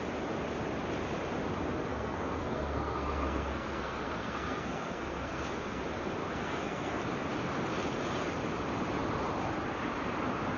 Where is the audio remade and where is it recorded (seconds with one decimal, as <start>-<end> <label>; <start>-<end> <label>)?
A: 0.0-1.9 recorded; 1.9-5.8 remade; 5.8-6.2 recorded; 6.2-7.0 remade; 7.0-10.6 recorded